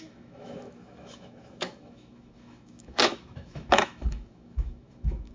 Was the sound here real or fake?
fake